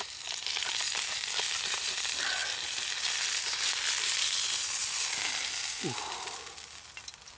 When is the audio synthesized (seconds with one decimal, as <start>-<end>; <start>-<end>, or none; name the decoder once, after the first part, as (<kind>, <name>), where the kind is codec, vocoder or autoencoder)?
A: 0.0-2.4 (vocoder, BigVGAN v2); 3.5-4.8; 5.5-7.4